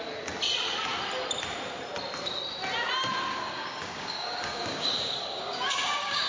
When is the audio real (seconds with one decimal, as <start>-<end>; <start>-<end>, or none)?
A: 0.0-3.3

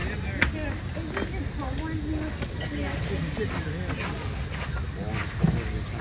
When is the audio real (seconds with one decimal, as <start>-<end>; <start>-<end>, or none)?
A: 0.0-6.0